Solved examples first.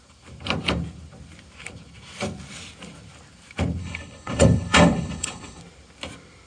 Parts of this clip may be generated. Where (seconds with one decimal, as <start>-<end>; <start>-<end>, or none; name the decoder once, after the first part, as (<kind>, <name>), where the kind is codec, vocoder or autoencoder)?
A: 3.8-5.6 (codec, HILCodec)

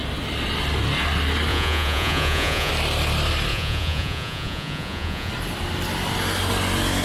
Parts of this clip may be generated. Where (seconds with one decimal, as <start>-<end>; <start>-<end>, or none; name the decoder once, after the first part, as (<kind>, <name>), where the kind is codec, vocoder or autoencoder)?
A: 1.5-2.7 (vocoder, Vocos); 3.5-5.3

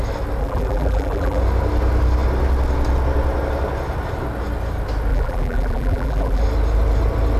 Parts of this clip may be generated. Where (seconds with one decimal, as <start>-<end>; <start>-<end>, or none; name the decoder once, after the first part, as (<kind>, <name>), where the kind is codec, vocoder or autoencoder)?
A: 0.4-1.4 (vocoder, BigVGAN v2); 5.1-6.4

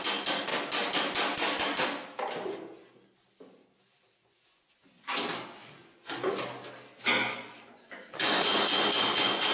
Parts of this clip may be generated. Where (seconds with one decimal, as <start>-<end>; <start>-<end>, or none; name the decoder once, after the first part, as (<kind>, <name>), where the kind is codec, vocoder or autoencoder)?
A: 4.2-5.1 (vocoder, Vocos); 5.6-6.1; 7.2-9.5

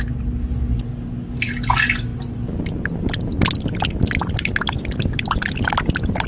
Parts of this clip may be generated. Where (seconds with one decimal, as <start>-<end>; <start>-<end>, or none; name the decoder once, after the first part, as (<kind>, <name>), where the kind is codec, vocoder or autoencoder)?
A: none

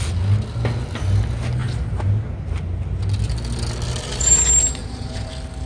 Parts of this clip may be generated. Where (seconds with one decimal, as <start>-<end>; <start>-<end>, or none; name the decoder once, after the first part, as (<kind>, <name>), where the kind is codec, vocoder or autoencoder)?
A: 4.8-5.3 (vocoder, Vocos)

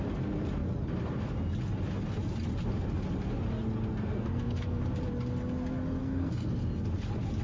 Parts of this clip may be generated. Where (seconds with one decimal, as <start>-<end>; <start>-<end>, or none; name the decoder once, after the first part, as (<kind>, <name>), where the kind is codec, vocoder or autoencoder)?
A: 3.9-4.8 (codec, SNAC); 6.0-6.5

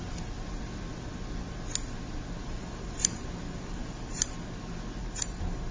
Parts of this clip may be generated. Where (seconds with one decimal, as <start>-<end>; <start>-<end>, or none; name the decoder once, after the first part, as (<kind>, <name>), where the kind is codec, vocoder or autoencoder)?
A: 2.4-4.3 (vocoder, BigVGAN v2); 5.0-5.7